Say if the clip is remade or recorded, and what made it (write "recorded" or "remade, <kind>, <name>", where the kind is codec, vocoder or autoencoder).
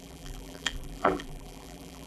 remade, vocoder, BigVGAN v2